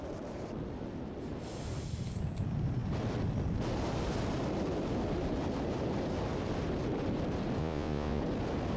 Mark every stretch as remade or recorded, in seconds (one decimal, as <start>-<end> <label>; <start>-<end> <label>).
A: 0.0-7.6 recorded; 7.6-8.2 remade; 8.2-8.8 recorded